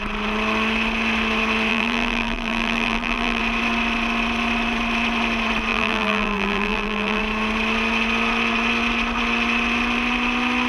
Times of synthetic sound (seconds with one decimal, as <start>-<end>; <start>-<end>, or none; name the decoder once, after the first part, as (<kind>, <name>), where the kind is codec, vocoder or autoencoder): 1.7-3.4 (vocoder, BigVGAN v2); 5.7-7.2